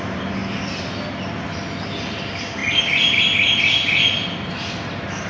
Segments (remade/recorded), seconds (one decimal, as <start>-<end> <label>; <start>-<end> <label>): 0.0-5.3 recorded